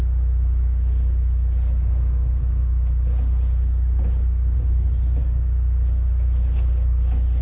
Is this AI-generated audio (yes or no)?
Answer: no